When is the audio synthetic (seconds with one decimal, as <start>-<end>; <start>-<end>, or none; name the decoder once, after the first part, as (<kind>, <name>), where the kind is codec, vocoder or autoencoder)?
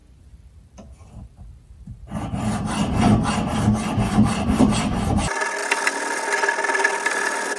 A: 0.0-4.6 (vocoder, BigVGAN v2)